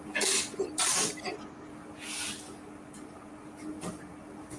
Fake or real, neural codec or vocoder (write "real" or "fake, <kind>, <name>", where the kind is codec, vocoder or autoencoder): real